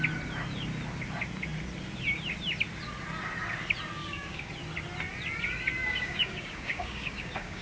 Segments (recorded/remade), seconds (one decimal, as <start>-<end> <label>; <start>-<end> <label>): 0.0-4.0 recorded; 4.0-4.5 remade; 4.5-5.8 recorded; 5.8-7.6 remade